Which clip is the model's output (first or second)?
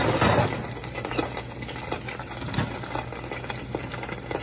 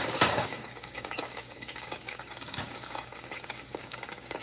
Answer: second